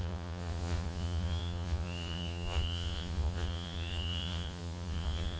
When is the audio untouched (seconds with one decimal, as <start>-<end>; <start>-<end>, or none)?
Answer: none